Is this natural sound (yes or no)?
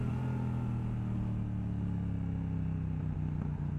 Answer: yes